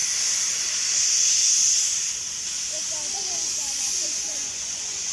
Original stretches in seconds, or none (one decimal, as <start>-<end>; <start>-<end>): 0.0-3.1